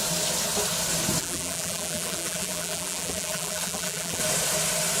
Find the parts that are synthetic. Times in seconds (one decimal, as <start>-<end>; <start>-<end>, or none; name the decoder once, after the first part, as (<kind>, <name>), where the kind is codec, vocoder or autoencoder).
1.2-4.2 (vocoder, BigVGAN v2)